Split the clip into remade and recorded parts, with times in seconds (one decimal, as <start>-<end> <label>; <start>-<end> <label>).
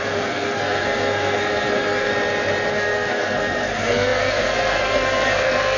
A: 0.0-2.1 remade; 2.1-2.7 recorded; 2.7-5.8 remade